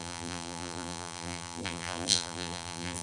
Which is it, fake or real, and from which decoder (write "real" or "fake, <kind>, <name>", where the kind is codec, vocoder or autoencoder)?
fake, vocoder, BigVGAN v2